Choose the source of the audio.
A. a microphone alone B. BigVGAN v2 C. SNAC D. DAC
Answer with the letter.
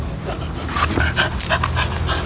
A